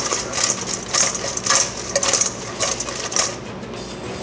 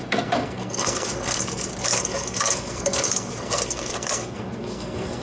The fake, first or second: second